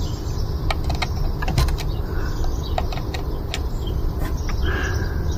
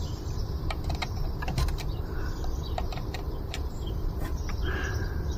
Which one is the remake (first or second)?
second